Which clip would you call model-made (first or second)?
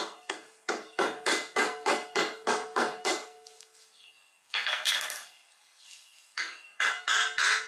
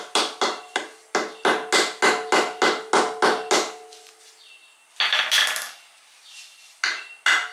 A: first